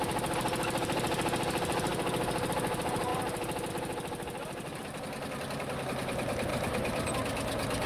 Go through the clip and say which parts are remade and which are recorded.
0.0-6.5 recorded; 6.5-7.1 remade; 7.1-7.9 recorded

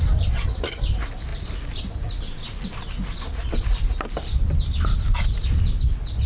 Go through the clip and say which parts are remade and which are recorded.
0.0-6.3 recorded

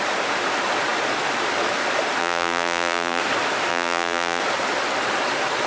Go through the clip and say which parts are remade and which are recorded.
0.0-2.2 recorded; 2.2-3.2 remade; 3.2-3.7 recorded; 3.7-4.4 remade; 4.4-5.7 recorded

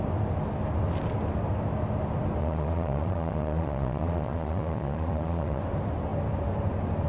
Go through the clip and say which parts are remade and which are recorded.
0.0-2.4 recorded; 2.4-5.6 remade; 5.6-7.1 recorded

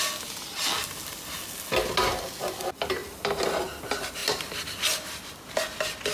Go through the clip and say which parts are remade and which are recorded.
0.0-6.1 recorded

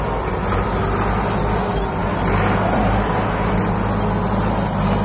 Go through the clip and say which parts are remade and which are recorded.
0.0-5.0 recorded

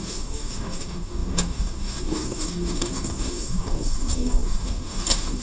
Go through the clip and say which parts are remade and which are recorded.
0.0-5.4 remade

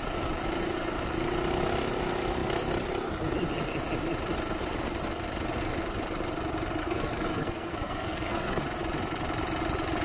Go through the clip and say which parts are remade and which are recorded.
0.0-6.8 recorded; 6.8-8.6 remade; 8.6-10.0 recorded